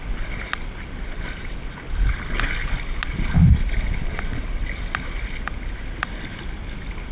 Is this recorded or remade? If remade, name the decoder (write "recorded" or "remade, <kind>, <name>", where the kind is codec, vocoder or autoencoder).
recorded